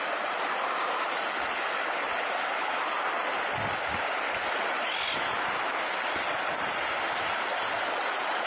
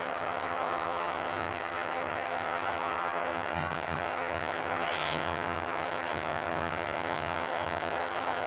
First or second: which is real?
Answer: first